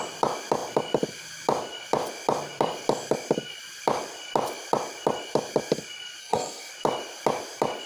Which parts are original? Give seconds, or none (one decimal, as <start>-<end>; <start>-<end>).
0.0-6.2; 6.7-7.9